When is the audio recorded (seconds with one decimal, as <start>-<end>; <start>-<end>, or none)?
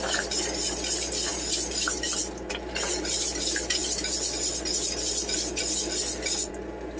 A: 0.0-7.0